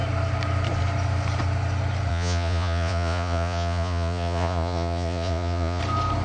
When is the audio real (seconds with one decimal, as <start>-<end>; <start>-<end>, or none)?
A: 0.0-2.1; 5.8-6.2